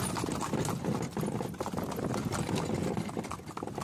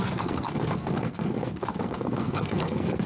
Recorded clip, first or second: first